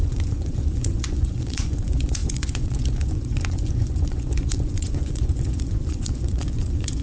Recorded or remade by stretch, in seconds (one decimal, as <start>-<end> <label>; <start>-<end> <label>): 0.0-7.0 remade